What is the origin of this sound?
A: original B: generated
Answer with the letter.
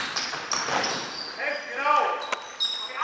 A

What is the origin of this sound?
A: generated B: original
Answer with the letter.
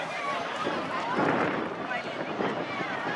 A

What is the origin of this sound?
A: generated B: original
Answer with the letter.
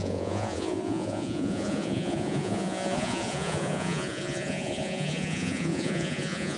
A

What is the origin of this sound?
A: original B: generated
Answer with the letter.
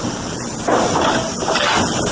A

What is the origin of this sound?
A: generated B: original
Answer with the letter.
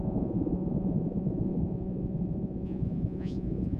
A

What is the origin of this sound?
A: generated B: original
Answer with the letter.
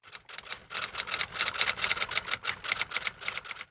B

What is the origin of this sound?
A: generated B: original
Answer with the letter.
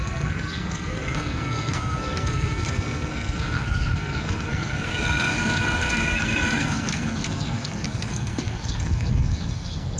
A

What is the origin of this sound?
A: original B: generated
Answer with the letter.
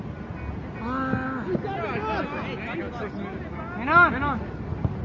A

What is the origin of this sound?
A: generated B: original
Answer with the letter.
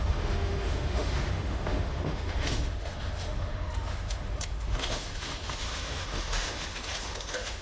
A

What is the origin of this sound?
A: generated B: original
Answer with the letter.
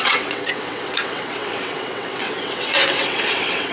A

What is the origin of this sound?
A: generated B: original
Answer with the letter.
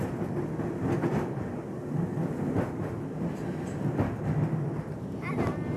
B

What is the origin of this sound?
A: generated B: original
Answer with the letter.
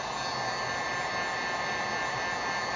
B